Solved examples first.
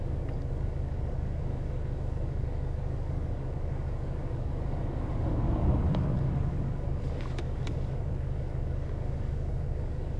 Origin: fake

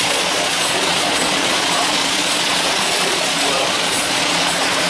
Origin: fake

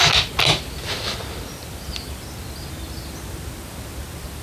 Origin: real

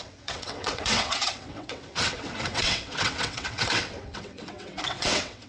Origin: fake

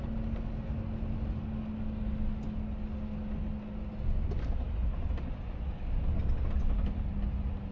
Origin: real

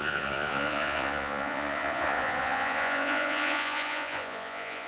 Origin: fake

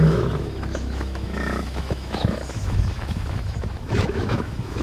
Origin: fake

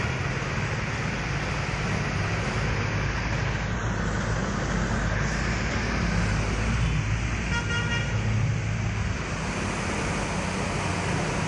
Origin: real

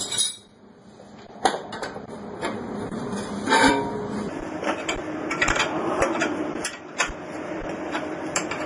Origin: fake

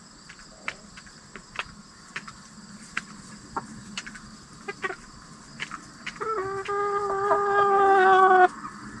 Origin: real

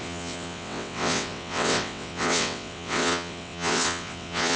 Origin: fake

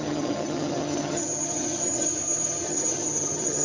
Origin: fake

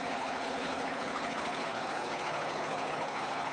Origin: fake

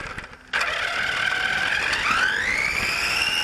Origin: real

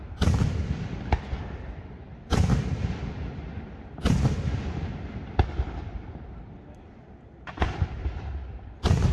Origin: real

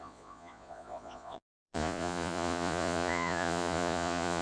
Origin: fake